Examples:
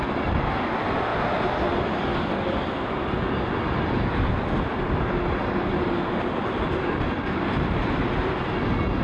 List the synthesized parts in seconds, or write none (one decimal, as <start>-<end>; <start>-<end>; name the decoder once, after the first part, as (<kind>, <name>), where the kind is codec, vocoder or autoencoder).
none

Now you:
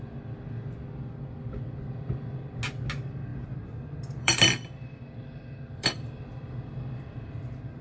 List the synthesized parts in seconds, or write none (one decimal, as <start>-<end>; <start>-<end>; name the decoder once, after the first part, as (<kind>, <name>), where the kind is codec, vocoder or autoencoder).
3.3-7.8 (vocoder, BigVGAN v2)

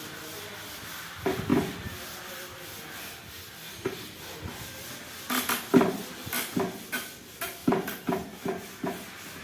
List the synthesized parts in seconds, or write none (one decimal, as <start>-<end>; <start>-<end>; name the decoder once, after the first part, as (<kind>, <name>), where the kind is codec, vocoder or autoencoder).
none

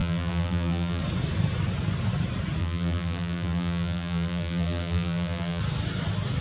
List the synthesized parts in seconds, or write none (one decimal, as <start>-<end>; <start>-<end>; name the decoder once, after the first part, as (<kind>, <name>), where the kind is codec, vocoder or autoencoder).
0.0-1.0 (vocoder, BigVGAN v2); 2.6-5.6